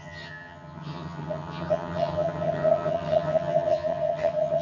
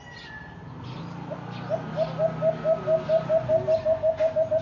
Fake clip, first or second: first